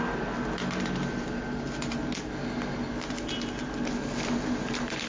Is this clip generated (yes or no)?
no